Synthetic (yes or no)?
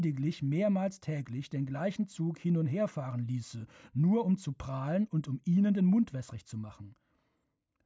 no